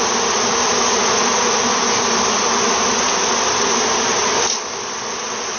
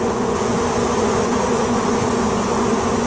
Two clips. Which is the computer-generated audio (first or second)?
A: second